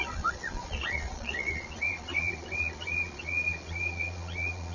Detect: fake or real fake